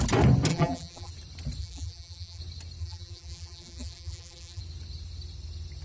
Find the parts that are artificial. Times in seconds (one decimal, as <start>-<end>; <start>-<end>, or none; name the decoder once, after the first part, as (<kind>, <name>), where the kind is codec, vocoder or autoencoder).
0.5-1.1 (vocoder, BigVGAN v2); 1.6-2.4; 2.8-4.6